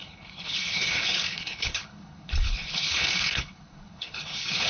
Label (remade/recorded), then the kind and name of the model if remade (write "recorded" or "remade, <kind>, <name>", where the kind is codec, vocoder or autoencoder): remade, codec, HILCodec